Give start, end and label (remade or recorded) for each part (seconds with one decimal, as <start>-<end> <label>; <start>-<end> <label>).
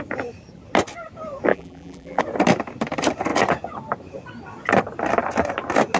0.0-1.5 recorded; 1.5-2.2 remade; 2.2-6.0 recorded